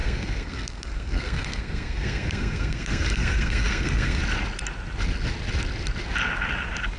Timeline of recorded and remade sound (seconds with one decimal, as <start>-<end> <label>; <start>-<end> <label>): 0.0-4.2 remade; 4.2-7.0 recorded